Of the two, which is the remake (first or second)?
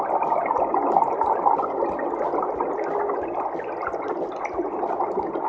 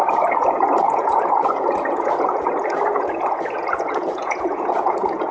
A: second